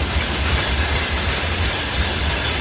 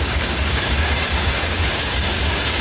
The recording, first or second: first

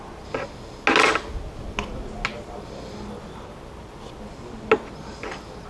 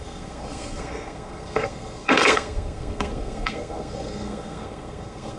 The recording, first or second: first